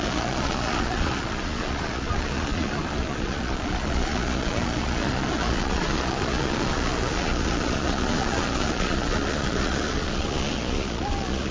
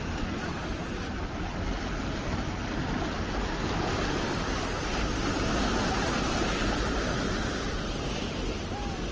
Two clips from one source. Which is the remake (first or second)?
first